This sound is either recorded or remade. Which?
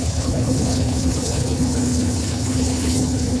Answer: remade